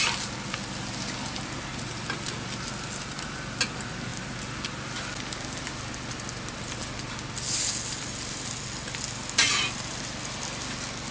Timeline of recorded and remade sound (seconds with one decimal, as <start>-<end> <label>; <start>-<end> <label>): 0.0-11.1 recorded